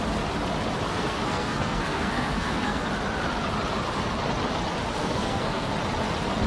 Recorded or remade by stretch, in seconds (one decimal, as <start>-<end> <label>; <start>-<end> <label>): 0.0-0.9 recorded; 0.9-2.9 remade; 2.9-5.0 recorded; 5.0-5.7 remade; 5.7-6.5 recorded